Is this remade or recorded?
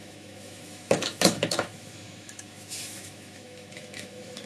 remade